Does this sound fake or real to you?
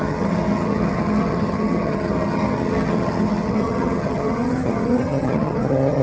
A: fake